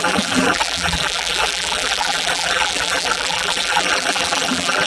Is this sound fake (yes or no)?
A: yes